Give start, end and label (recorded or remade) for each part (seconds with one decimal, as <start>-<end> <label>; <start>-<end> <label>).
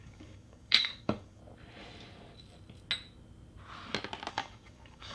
0.0-1.4 remade; 1.4-4.3 recorded; 4.3-5.1 remade